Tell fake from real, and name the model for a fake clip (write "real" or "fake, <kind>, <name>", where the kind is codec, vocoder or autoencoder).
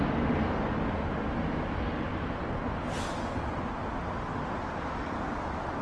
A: real